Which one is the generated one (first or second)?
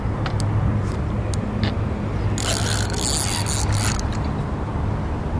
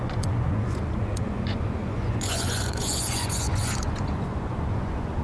second